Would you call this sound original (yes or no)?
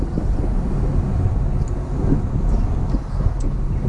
yes